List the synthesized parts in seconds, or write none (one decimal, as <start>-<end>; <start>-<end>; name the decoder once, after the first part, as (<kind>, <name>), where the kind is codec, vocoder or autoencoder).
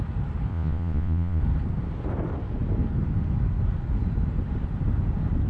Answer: 0.5-1.4 (vocoder, Vocos)